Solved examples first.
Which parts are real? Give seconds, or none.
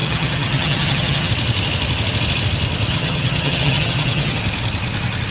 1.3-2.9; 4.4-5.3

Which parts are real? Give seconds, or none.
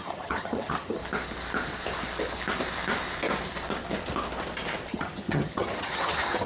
1.0-4.9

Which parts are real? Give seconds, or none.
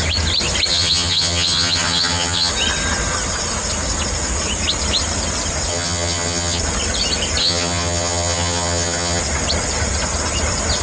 0.0-0.7; 2.5-5.7; 6.6-7.4; 9.2-10.8